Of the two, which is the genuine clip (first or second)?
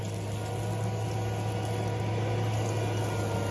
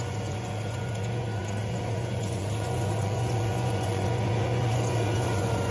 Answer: first